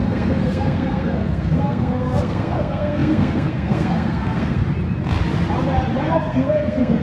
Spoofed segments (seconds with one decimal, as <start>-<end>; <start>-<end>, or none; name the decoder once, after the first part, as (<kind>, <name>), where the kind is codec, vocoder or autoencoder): 0.0-4.6 (codec, SNAC); 6.0-7.0